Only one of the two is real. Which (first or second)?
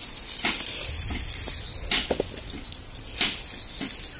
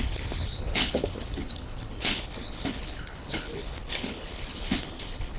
first